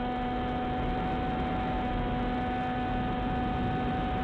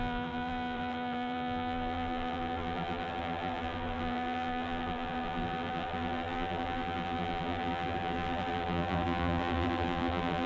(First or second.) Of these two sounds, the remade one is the second